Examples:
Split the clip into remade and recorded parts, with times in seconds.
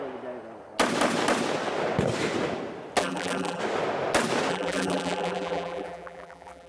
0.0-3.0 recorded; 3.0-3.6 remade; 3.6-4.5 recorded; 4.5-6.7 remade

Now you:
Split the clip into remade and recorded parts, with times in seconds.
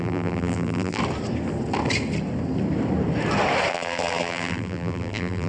0.0-1.0 remade; 1.0-3.7 recorded; 3.7-5.5 remade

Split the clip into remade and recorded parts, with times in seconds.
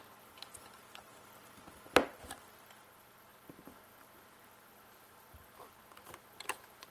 0.0-6.9 recorded